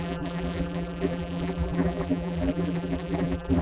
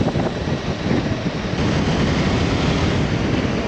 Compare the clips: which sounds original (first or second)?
second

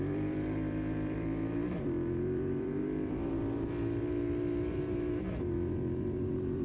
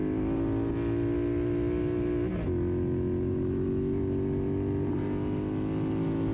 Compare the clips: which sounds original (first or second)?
second